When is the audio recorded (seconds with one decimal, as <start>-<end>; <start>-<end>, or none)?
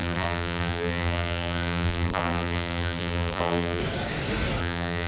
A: 3.8-4.6